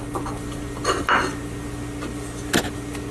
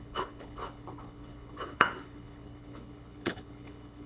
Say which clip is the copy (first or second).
second